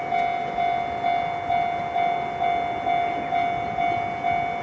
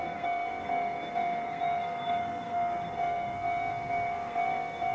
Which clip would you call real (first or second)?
first